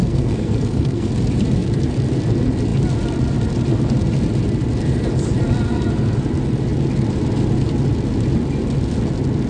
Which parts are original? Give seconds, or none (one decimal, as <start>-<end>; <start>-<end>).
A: 1.1-9.5